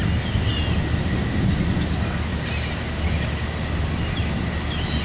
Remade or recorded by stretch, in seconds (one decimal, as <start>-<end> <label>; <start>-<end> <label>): 0.0-5.0 recorded